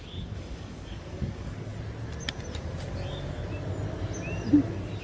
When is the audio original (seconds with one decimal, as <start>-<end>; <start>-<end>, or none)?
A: 1.7-5.0